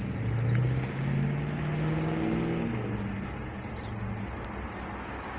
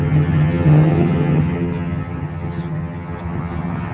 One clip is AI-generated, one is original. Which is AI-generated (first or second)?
second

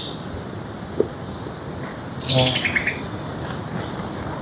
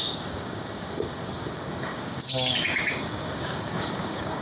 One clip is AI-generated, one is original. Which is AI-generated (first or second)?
second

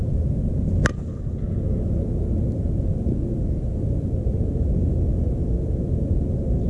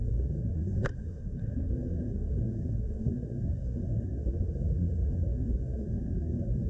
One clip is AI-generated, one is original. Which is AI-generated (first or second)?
second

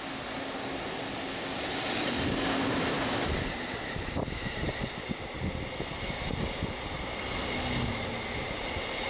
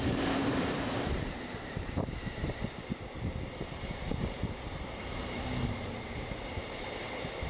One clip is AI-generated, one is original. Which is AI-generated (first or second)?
second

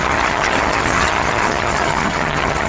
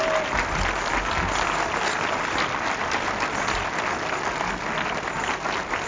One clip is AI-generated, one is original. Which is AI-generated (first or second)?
first